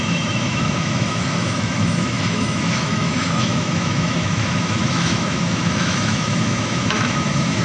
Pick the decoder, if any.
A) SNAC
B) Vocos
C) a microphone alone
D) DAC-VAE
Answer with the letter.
D